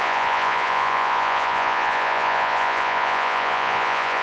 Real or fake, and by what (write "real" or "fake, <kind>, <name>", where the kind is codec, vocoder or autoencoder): fake, vocoder, Vocos